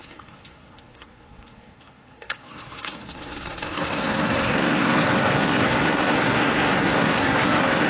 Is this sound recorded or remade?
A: remade